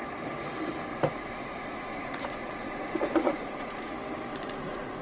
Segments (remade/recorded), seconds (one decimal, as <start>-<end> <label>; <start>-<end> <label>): 0.0-0.9 recorded; 0.9-3.9 remade; 3.9-4.3 recorded; 4.3-5.0 remade